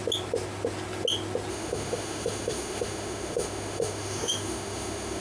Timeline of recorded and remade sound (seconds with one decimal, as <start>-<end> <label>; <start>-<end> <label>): 0.0-1.5 recorded; 1.5-5.2 remade